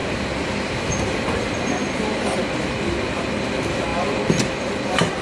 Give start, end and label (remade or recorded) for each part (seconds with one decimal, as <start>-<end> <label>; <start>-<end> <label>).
0.0-5.2 recorded